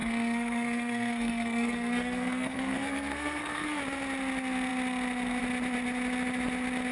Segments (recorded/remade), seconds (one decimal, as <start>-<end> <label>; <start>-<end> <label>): 0.0-3.8 remade; 3.8-6.9 recorded